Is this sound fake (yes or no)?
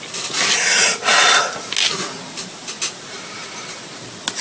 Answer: no